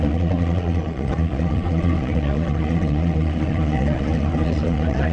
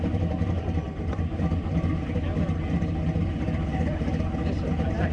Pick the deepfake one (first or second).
first